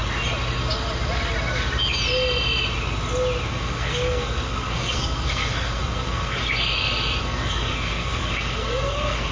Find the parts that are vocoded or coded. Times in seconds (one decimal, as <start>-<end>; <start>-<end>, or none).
3.5-6.4; 7.2-9.3